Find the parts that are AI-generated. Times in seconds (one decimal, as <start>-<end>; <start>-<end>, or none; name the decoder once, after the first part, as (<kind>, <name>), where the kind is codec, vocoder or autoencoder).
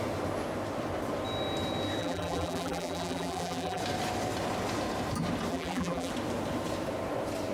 2.0-3.8 (vocoder, BigVGAN v2); 5.5-6.1